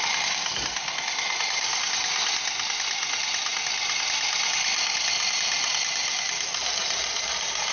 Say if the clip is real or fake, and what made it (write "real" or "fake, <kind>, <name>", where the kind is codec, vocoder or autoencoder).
real